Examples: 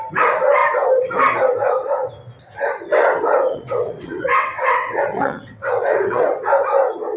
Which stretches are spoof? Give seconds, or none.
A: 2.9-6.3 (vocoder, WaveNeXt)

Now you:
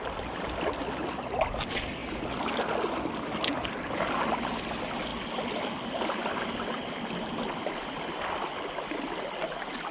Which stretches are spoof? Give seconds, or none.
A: none

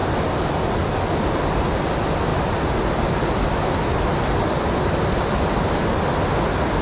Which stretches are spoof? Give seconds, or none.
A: none

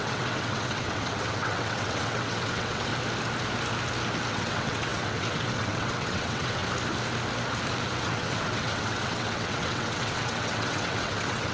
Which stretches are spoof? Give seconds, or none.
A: 0.0-2.9 (vocoder, WaveNeXt); 4.3-6.6; 8.0-11.5

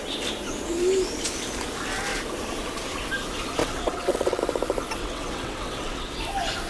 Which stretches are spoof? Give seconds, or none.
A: 3.6-4.4 (vocoder, WaveNeXt); 5.0-6.2

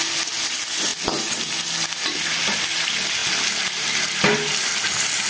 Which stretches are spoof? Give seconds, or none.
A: none